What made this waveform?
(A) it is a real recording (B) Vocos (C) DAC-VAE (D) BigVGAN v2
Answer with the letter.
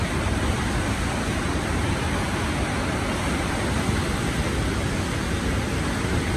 A